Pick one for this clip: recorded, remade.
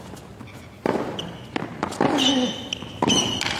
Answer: recorded